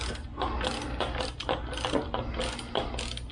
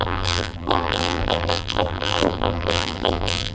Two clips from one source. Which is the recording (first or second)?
first